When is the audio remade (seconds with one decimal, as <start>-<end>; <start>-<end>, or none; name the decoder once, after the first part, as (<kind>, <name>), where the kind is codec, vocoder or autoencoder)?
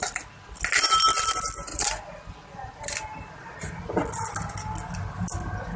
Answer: 1.7-3.8 (vocoder, BigVGAN v2)